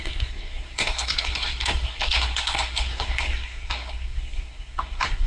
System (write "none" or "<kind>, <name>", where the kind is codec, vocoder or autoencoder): codec, SNAC